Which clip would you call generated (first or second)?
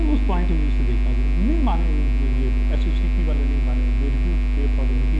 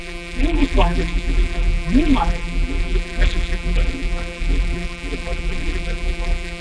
second